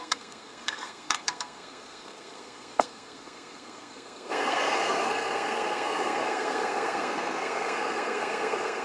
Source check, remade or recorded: remade